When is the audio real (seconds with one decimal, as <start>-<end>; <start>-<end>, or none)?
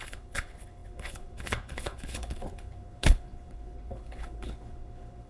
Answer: none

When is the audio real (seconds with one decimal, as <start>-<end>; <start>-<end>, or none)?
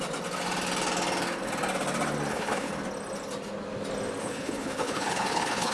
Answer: 0.0-2.3; 2.7-4.2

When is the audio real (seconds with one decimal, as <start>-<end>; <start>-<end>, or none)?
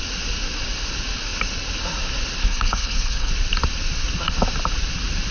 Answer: 0.0-2.4; 3.3-5.3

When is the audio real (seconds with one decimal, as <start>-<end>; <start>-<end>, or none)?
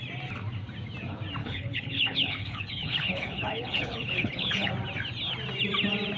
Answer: 0.0-1.4; 4.7-6.2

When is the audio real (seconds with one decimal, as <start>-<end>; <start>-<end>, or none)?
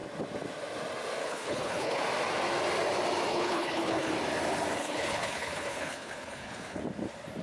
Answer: 0.0-1.2; 2.0-3.3; 4.1-4.8; 6.8-7.4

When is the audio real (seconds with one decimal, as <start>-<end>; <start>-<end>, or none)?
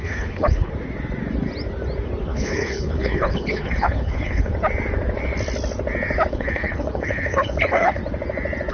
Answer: 0.7-2.2; 4.5-6.3; 8.0-8.7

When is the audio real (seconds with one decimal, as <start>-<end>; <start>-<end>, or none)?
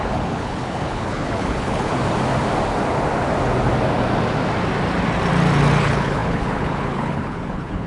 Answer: 1.9-5.8